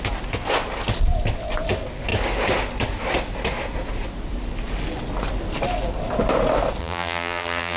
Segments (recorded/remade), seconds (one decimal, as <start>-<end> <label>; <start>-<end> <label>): 0.0-6.8 recorded; 6.8-7.8 remade